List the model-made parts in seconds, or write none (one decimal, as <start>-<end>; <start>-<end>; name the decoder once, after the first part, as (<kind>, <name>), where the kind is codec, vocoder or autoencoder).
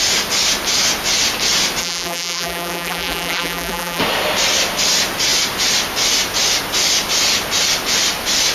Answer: 1.8-4.0 (vocoder, BigVGAN v2)